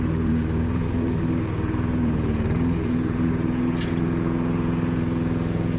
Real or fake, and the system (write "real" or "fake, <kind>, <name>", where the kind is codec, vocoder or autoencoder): fake, vocoder, Vocos